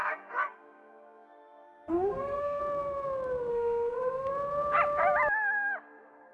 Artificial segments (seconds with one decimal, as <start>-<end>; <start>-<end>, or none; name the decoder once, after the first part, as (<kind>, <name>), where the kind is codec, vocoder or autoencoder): 0.0-2.6 (codec, SNAC); 3.5-4.3